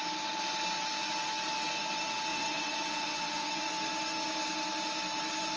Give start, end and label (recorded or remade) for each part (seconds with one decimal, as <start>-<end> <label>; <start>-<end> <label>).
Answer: 0.0-2.3 recorded; 2.3-3.6 remade; 3.6-5.6 recorded